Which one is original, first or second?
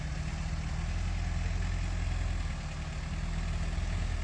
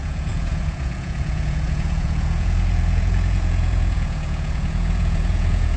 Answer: first